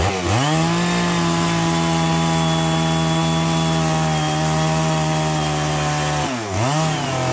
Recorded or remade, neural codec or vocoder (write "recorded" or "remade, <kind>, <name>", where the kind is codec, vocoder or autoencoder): recorded